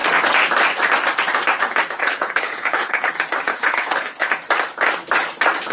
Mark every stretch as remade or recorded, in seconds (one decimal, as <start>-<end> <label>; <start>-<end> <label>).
0.0-2.0 recorded; 2.0-3.1 remade; 3.1-3.5 recorded; 3.5-4.3 remade; 4.3-5.7 recorded